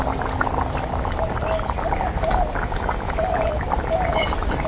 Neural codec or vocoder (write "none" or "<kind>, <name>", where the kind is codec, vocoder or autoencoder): none